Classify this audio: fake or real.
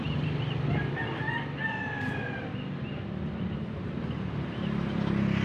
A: real